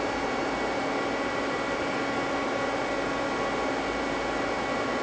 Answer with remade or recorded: recorded